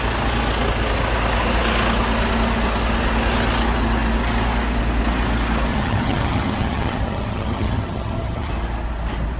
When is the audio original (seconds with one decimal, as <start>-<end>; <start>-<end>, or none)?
0.0-5.7; 8.5-9.4